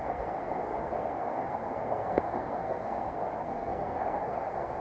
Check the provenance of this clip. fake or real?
fake